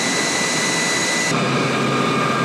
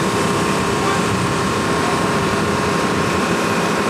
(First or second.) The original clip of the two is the first